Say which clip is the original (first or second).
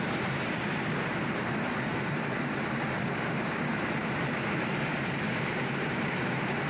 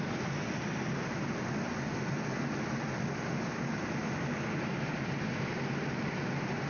second